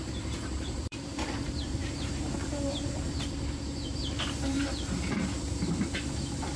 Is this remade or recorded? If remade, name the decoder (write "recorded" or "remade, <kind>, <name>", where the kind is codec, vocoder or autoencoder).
remade, vocoder, BigVGAN v2